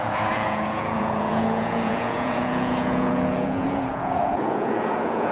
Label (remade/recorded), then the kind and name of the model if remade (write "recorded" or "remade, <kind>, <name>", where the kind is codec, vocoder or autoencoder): remade, vocoder, Vocos